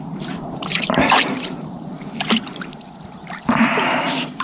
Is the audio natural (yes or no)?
no